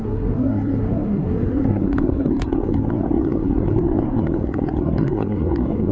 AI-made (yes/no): yes